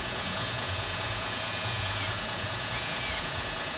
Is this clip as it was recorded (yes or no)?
no